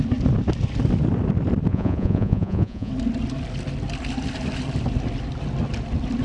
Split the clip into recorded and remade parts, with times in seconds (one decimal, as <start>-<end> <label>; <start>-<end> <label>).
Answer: 0.0-1.7 recorded; 1.7-2.9 remade; 2.9-6.2 recorded